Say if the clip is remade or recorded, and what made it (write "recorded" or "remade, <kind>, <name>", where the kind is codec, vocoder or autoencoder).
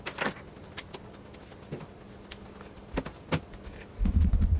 recorded